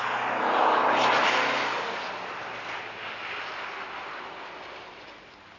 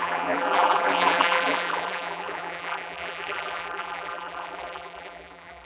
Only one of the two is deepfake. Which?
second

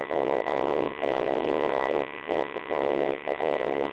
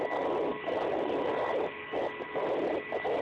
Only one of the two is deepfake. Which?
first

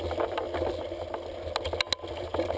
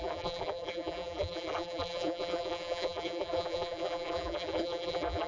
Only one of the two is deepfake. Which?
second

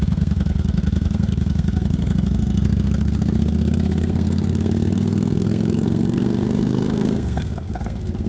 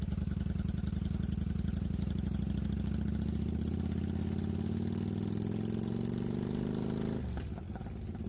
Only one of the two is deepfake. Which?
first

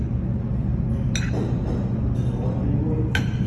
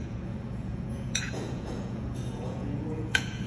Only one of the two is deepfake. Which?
second